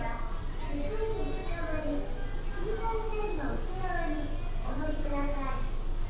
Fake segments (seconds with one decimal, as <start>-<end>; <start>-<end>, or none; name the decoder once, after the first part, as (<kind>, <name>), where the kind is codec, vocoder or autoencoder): none